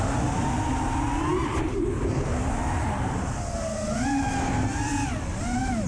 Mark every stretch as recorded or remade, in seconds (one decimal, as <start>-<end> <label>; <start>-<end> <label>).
0.0-5.9 recorded